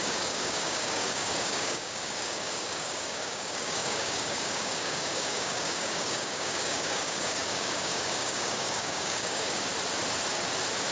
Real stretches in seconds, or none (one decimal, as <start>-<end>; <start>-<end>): 9.7-10.9